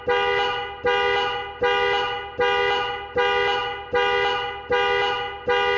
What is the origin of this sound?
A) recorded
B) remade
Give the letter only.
A